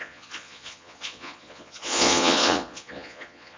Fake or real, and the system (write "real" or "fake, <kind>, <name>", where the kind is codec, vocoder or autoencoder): fake, vocoder, Vocos